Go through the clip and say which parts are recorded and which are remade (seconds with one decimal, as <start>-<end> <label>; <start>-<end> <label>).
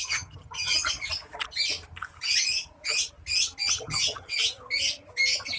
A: 0.0-0.7 remade; 0.7-3.7 recorded; 3.7-4.3 remade; 4.3-5.6 recorded